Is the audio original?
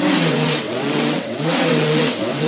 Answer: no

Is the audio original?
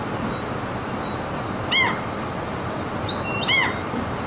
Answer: yes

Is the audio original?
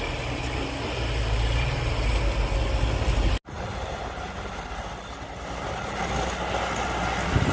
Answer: yes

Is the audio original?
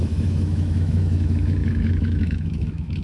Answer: no